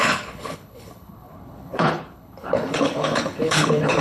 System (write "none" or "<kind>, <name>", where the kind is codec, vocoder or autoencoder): codec, HILCodec